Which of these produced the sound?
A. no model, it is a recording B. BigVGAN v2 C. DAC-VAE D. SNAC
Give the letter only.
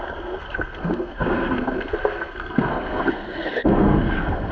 D